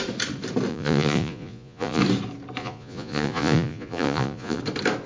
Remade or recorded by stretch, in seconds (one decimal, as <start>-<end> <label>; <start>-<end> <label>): 0.0-0.7 recorded; 0.7-2.0 remade; 2.0-2.6 recorded; 2.6-4.6 remade; 4.6-5.1 recorded